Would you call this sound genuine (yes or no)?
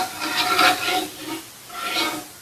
yes